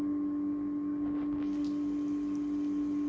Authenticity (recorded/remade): recorded